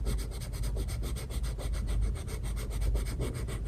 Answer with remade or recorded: recorded